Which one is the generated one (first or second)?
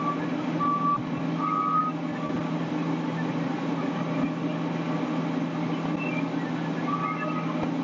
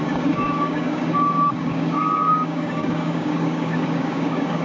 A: second